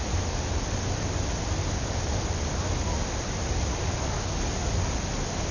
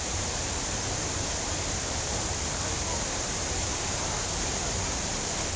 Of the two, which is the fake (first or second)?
second